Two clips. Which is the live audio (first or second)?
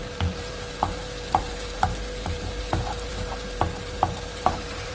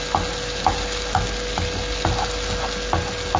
second